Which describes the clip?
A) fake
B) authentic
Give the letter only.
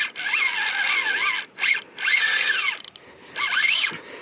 B